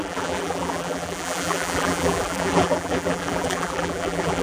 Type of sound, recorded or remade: remade